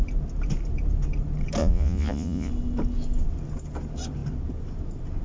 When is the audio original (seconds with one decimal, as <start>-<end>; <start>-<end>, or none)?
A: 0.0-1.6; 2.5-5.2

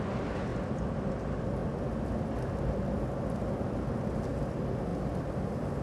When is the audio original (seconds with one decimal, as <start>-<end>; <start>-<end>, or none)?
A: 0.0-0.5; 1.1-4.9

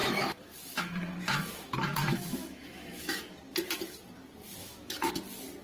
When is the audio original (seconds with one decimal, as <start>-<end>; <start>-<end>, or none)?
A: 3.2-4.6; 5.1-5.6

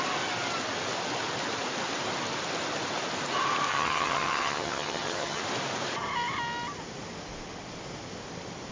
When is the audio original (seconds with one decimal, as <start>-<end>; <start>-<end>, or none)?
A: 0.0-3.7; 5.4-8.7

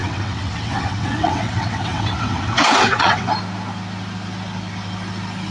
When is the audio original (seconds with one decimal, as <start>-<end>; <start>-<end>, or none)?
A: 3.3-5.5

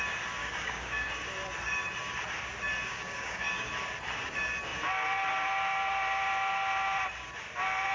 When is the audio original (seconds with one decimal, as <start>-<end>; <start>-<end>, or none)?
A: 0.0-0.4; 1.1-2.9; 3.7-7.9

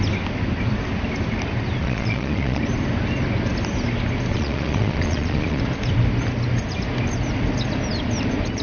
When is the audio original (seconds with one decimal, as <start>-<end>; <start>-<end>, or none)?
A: 0.0-1.8; 2.6-4.3; 5.6-8.6

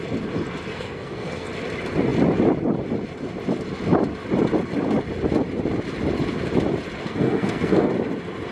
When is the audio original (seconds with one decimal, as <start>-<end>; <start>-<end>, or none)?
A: 0.0-0.7; 1.5-7.0; 7.9-8.5